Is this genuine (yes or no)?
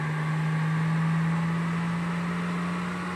yes